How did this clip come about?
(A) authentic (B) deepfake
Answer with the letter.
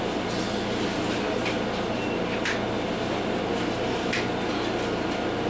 A